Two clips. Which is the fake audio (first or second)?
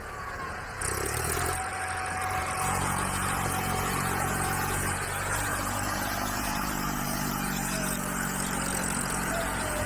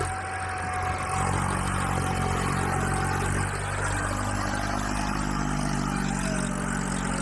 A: first